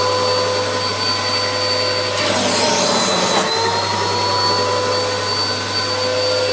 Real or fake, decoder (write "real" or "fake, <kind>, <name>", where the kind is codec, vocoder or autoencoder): real